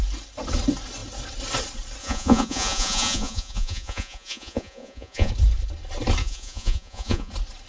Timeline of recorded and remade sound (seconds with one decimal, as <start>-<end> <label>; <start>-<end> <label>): 0.0-2.0 recorded; 2.0-5.3 remade; 5.3-6.2 recorded; 6.2-7.3 remade; 7.3-7.7 recorded